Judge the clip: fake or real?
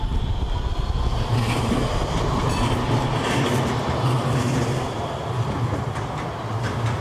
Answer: real